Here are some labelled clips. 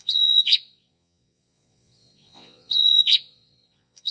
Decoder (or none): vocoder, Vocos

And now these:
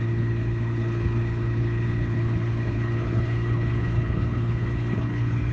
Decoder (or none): codec, HILCodec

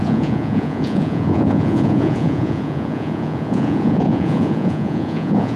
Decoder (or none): vocoder, Vocos